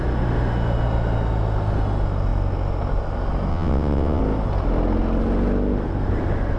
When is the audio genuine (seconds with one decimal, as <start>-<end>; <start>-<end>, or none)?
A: 0.0-3.5; 4.2-6.6